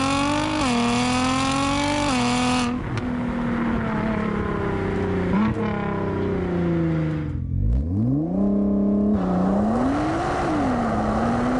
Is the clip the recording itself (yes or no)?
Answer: yes